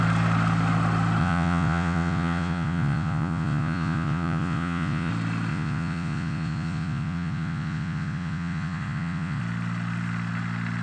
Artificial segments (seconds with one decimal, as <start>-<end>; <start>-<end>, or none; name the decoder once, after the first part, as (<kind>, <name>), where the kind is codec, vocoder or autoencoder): 1.2-5.1 (vocoder, Vocos); 5.5-9.4

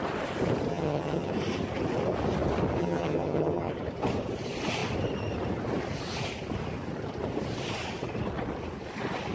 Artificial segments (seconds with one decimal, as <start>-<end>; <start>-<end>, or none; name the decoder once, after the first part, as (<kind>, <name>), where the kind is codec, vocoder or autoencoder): 0.7-1.3 (vocoder, HiFi-GAN); 2.8-3.7

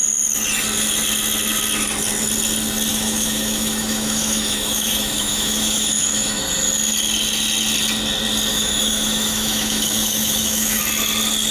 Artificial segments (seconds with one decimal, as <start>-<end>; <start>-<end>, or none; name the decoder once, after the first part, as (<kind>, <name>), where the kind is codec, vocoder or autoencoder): 2.9-6.4 (autoencoder, DAC-VAE); 8.5-10.8